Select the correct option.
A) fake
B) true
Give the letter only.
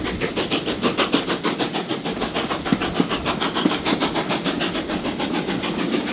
B